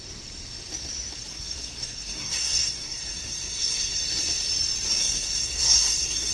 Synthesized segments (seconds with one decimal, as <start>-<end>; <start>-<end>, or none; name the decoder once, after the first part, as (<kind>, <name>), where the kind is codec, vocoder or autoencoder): 1.3-4.0 (codec, SNAC); 5.0-6.3